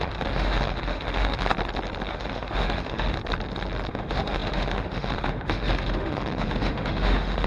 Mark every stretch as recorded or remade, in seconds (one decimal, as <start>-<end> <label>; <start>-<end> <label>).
0.0-1.5 remade; 1.5-2.1 recorded; 2.1-3.2 remade; 3.2-3.9 recorded; 3.9-7.5 remade